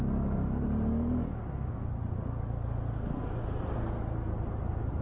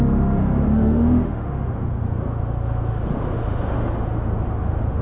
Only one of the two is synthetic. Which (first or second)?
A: second